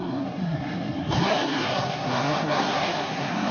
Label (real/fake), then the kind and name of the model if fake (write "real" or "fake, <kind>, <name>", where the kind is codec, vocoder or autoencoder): fake, codec, SNAC